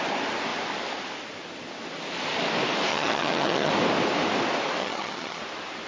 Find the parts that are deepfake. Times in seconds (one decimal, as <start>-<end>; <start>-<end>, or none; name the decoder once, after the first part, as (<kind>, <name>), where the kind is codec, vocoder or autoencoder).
2.9-3.7 (vocoder, HiFi-GAN); 4.8-5.4